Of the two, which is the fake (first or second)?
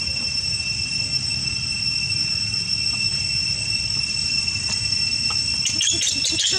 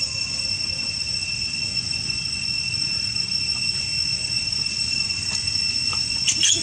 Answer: second